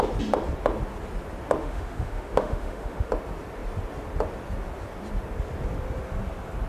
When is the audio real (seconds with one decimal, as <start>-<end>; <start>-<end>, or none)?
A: 0.0-1.6; 3.1-6.7